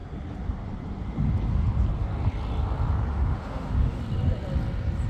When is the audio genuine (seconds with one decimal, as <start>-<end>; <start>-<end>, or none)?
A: 0.0-3.1; 4.0-5.1